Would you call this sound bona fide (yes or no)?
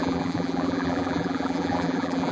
no